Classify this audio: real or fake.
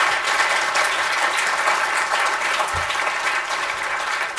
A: real